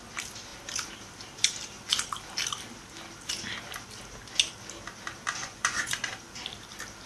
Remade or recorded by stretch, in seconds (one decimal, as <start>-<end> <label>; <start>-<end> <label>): 0.0-5.4 recorded; 5.4-6.1 remade; 6.1-7.1 recorded